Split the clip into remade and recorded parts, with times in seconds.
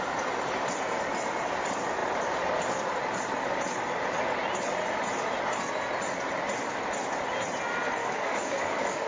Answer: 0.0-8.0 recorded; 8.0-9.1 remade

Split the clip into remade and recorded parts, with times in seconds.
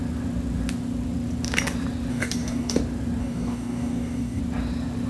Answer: 0.0-2.1 recorded; 2.1-2.8 remade; 2.8-3.2 recorded; 3.2-4.4 remade; 4.4-5.1 recorded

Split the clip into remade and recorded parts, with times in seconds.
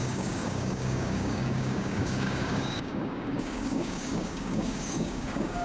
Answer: 0.0-5.6 remade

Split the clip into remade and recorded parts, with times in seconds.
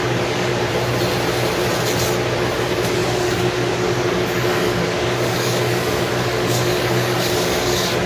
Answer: 0.0-0.5 remade; 0.5-2.6 recorded; 2.6-8.1 remade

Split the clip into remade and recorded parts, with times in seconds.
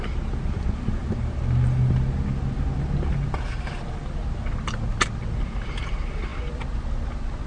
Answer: 0.0-7.5 recorded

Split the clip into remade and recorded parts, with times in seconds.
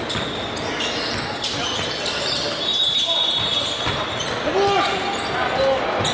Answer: 0.0-6.1 recorded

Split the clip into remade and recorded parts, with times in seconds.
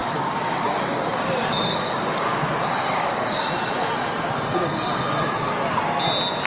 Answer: 0.0-3.5 remade; 3.5-6.5 recorded